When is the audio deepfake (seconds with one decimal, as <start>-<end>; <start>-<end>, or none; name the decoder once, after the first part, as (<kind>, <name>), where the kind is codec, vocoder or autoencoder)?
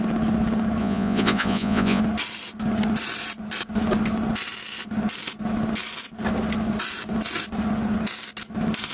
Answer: 0.8-2.0 (vocoder, Vocos)